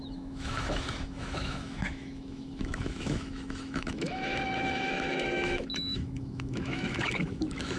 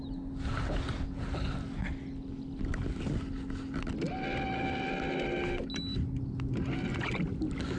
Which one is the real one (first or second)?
second